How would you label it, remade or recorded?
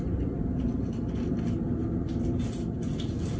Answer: recorded